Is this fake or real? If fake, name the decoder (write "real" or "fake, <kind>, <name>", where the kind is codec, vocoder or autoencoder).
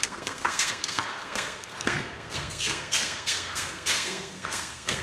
fake, codec, SNAC